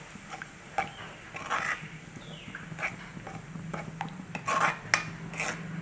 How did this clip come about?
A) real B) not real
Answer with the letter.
A